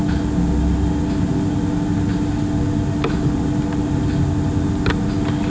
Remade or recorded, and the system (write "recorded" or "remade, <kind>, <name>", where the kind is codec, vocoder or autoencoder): recorded